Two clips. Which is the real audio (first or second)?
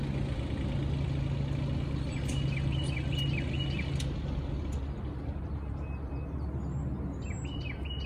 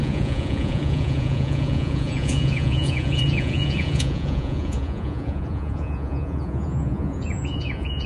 first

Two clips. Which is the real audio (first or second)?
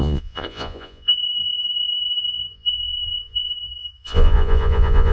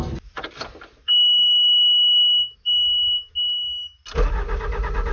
second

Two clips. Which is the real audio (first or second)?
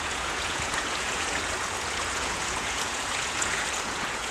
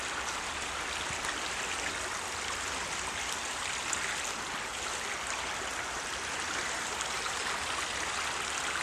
second